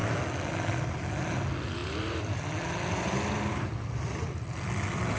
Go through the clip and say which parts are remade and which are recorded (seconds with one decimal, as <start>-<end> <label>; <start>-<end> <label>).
0.0-1.8 recorded; 1.8-5.2 remade